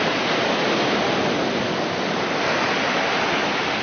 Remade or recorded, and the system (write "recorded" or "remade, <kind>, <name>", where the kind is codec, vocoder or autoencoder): recorded